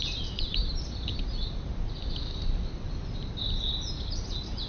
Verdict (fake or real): real